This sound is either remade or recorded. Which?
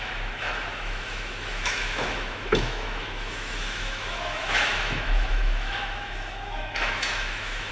remade